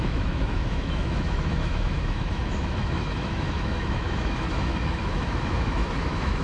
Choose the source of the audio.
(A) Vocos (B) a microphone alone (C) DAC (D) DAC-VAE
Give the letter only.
D